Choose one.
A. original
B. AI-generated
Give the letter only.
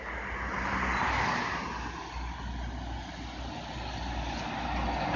A